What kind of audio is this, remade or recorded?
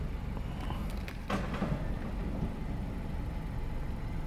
recorded